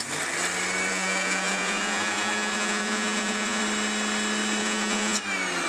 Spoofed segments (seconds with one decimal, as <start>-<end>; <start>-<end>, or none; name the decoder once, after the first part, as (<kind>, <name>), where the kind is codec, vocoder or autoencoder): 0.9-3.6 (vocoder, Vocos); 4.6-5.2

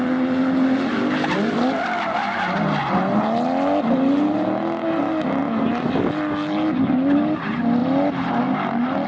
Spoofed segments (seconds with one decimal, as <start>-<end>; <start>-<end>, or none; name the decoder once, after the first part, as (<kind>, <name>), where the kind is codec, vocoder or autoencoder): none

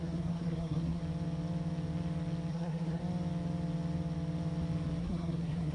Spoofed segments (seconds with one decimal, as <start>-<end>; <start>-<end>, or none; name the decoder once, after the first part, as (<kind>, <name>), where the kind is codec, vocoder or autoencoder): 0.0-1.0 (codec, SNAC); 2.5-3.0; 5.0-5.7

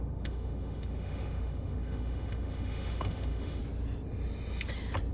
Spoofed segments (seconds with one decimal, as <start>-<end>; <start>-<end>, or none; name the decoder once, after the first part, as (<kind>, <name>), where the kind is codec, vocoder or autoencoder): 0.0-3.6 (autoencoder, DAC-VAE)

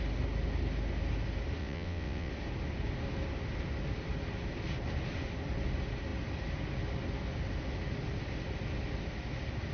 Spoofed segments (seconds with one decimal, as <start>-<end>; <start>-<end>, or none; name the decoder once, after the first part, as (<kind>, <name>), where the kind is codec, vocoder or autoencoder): 1.6-2.3 (vocoder, WaveNeXt)